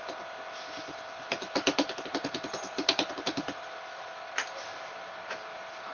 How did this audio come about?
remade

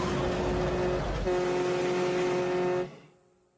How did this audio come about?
recorded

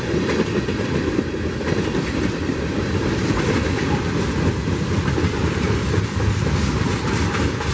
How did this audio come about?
remade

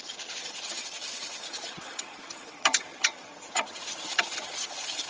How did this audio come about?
remade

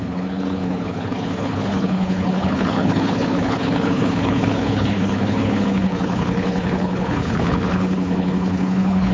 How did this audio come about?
remade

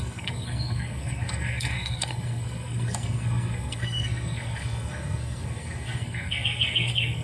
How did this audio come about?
remade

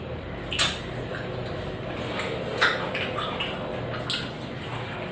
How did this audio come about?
recorded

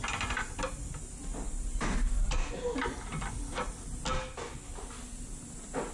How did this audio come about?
recorded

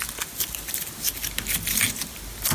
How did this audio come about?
recorded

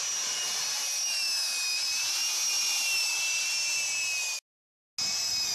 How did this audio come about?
recorded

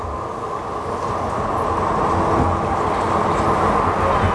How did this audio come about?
recorded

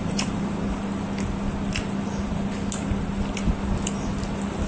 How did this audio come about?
recorded